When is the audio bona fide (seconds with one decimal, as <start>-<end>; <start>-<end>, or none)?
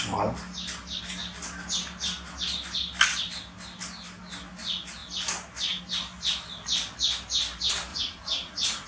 0.0-7.9